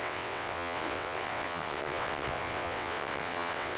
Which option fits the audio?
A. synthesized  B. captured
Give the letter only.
A